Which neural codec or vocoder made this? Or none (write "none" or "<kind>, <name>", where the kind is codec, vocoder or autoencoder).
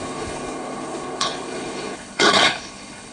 codec, HILCodec